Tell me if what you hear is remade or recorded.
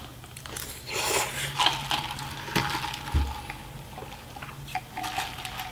recorded